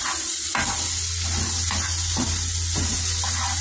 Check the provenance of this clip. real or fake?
real